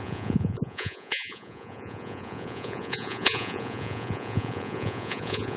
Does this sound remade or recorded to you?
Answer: remade